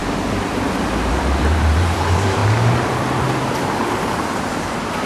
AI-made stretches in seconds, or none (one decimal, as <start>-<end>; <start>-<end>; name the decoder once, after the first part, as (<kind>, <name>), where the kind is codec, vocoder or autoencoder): 1.1-2.4 (vocoder, BigVGAN v2); 3.2-5.1